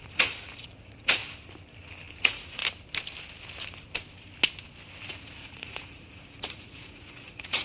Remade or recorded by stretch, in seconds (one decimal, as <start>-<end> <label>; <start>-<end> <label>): 0.0-1.2 remade; 1.2-2.2 recorded; 2.2-2.6 remade; 2.6-5.1 recorded; 5.1-7.6 remade